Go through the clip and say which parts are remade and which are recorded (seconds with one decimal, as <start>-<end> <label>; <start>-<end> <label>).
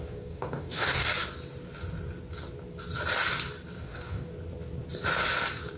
0.0-1.1 remade; 1.1-3.8 recorded; 3.8-4.3 remade; 4.3-5.8 recorded